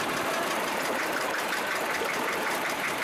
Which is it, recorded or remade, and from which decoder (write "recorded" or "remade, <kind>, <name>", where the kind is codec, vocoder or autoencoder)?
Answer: remade, vocoder, BigVGAN v2